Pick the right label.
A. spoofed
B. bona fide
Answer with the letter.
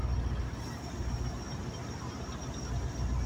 B